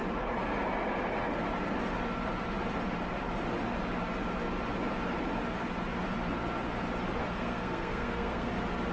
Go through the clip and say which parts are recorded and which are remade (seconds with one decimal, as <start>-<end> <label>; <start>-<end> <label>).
0.0-7.2 recorded; 7.2-8.5 remade; 8.5-8.9 recorded